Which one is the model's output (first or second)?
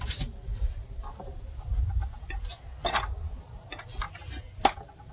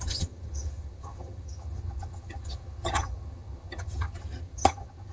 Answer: second